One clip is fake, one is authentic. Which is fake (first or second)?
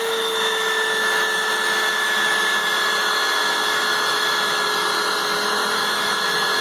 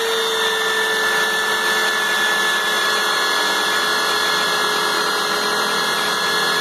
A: first